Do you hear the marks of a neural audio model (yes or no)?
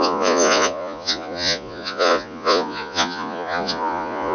yes